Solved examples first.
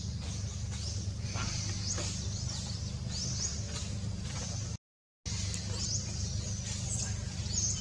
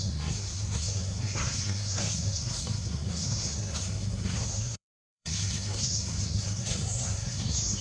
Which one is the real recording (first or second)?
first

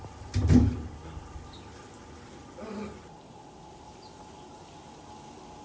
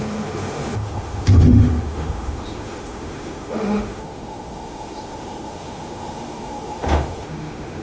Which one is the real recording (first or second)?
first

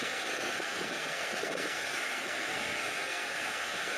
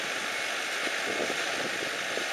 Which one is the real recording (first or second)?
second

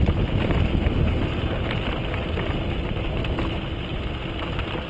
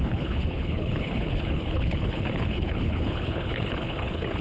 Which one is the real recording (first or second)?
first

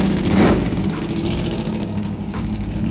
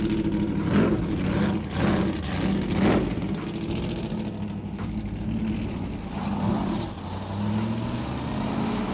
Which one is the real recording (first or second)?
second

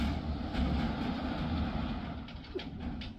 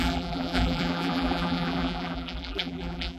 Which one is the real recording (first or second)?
first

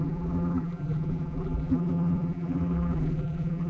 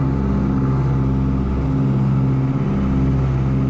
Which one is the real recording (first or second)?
second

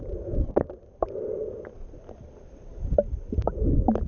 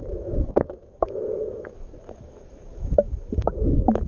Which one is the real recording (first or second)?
first